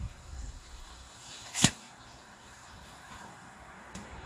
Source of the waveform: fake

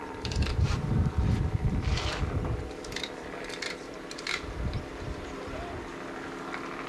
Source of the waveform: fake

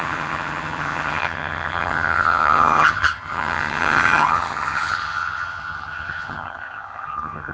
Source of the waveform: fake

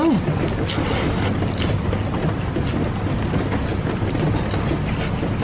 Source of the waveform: real